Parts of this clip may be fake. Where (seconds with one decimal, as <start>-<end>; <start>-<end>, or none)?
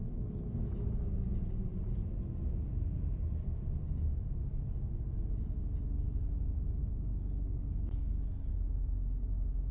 6.8-8.5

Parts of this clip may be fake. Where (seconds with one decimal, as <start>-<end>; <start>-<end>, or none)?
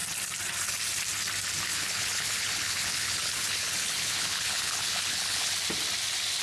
1.7-5.5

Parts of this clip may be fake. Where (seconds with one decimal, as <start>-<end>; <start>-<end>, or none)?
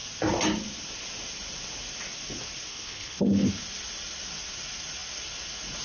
2.7-3.5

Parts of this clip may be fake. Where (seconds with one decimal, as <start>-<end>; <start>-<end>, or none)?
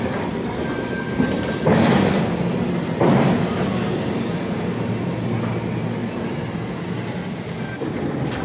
none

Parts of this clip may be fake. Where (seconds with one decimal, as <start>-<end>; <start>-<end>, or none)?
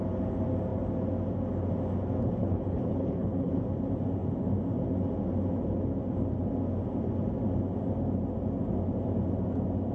2.4-3.5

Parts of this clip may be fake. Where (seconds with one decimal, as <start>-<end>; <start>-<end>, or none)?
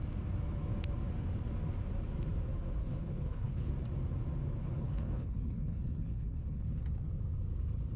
2.8-3.7; 4.6-6.8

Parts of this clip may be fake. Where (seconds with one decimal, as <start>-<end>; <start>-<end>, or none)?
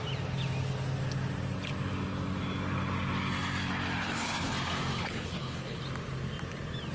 4.0-4.5; 5.0-5.8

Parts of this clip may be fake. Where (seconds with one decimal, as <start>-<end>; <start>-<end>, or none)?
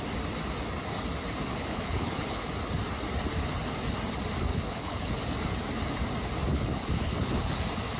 1.5-2.5; 4.5-5.1; 6.5-7.6